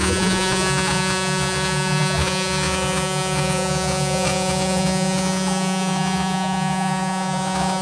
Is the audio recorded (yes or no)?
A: no